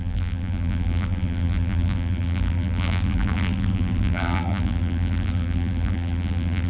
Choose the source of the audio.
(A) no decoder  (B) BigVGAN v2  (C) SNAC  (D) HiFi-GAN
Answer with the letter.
B